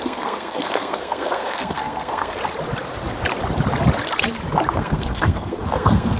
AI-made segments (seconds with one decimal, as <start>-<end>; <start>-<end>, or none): 0.0-2.4; 4.7-6.2